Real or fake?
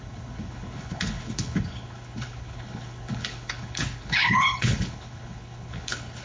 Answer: fake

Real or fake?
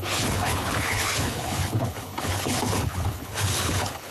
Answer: fake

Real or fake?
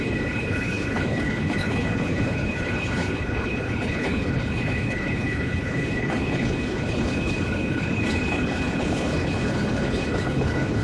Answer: fake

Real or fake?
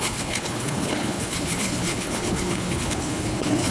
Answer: fake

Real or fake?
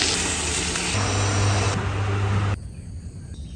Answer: real